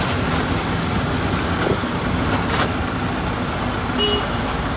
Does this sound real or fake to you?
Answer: real